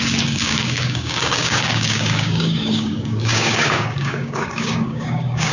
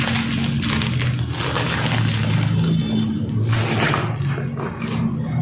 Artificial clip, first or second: first